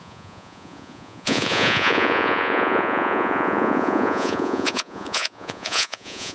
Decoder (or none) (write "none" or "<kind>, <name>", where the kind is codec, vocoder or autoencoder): vocoder, Vocos